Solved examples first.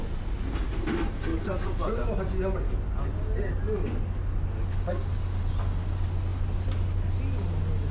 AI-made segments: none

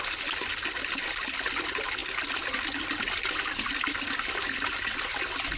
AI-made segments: none

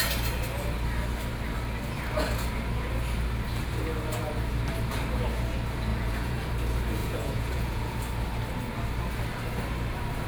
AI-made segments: 5.9-6.5 (vocoder, Vocos); 7.0-8.0